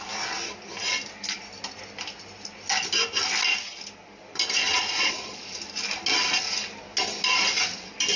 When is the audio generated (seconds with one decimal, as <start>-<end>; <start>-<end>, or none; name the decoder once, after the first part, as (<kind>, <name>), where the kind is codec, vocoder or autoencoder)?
4.7-5.4 (vocoder, Vocos)